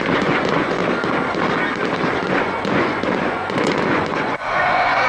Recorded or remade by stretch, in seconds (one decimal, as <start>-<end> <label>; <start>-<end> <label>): 0.0-0.8 remade; 0.8-2.3 recorded; 2.3-5.1 remade